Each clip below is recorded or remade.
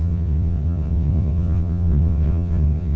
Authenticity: remade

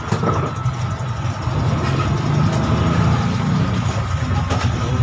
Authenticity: recorded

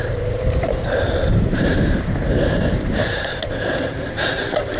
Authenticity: remade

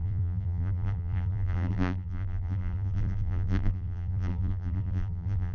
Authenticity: remade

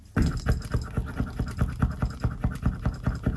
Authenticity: recorded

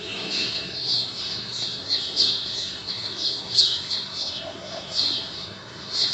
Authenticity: remade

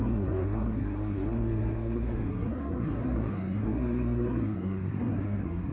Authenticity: remade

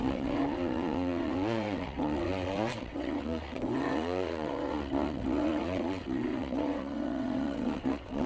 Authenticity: remade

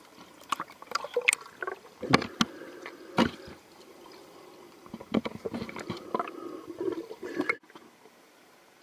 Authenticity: recorded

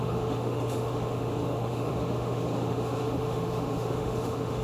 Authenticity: remade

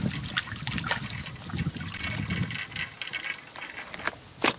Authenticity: recorded